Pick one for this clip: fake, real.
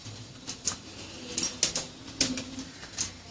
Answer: real